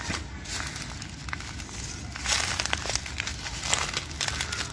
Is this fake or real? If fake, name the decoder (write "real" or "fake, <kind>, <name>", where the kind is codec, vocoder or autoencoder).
real